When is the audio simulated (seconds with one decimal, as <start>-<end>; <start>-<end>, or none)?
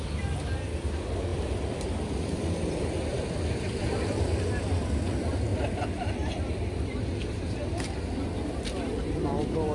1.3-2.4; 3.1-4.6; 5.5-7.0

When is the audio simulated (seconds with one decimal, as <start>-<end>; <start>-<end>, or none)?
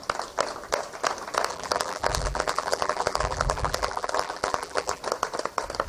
1.5-5.0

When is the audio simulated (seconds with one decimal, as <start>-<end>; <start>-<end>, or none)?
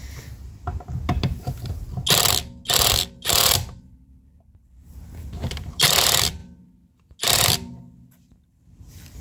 3.1-6.4; 8.4-9.2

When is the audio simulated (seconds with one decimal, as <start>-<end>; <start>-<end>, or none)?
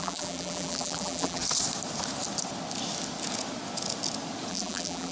0.0-1.4; 4.5-5.1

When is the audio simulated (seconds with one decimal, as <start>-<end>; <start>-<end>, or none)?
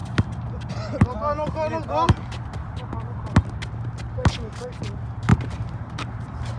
0.0-0.7; 5.3-6.6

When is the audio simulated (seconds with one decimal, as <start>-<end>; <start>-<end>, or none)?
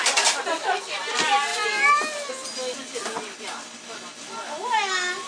none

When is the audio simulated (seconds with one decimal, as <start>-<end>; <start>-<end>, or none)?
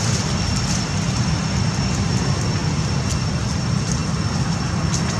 none